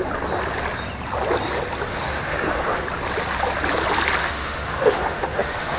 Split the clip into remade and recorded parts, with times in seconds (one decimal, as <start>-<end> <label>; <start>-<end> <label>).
0.0-1.9 recorded; 1.9-2.8 remade; 2.8-4.2 recorded; 4.2-5.8 remade